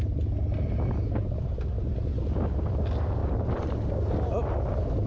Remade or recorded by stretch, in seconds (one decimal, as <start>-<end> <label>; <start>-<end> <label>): 0.0-3.2 recorded; 3.2-3.9 remade; 3.9-5.1 recorded